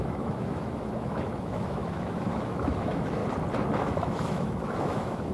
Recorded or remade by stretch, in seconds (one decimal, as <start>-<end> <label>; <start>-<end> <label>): 0.0-3.2 remade; 3.2-3.8 recorded; 3.8-5.3 remade